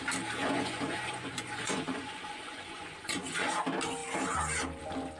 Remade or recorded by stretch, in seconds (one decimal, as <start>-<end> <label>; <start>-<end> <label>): 0.0-0.4 recorded; 0.4-3.5 remade; 3.5-5.2 recorded